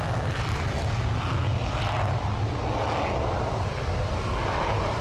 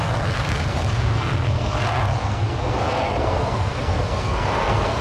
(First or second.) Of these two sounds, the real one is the first